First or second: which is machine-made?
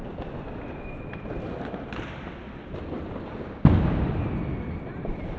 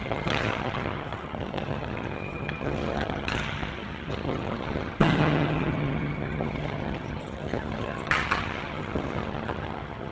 second